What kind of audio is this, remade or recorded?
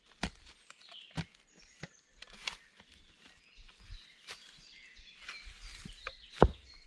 recorded